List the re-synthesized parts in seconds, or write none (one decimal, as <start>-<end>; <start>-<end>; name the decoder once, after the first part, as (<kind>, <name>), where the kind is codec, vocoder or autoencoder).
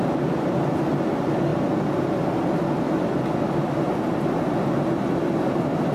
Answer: none